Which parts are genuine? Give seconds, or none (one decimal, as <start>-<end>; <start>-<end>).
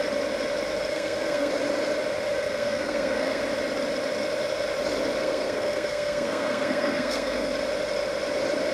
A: 0.0-0.9; 1.5-2.3; 3.4-5.2; 7.5-8.7